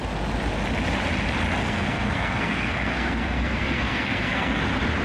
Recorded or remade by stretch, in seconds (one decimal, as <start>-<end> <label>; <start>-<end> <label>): 0.0-1.6 recorded; 1.6-4.6 remade; 4.6-5.0 recorded